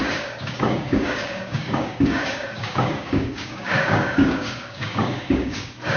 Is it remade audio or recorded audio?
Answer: remade